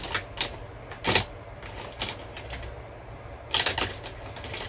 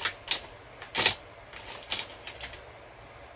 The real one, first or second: first